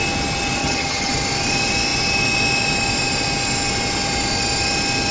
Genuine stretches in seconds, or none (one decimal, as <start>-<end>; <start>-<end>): 0.0-0.6; 1.1-5.1